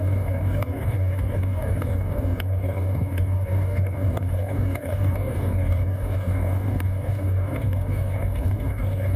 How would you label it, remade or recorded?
remade